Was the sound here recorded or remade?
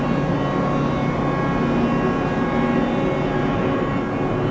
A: recorded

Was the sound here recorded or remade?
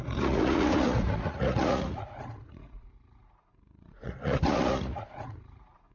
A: remade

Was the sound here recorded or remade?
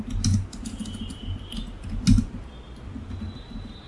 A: recorded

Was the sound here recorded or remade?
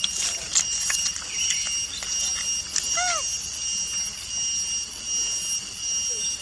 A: recorded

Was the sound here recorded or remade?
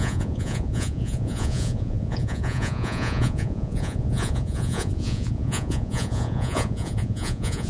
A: remade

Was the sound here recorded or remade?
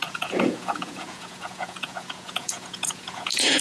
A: remade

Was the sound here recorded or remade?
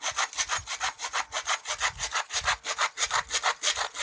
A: recorded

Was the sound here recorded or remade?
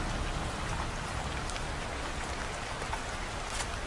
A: recorded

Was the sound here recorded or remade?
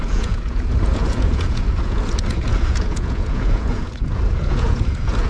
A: remade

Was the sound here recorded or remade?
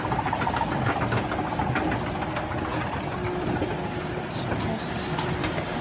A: recorded